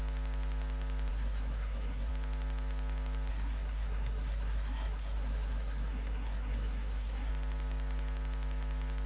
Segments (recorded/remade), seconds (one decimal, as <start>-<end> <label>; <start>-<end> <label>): 0.0-1.1 recorded; 1.1-2.1 remade; 2.1-3.3 recorded; 3.3-7.3 remade; 7.3-9.1 recorded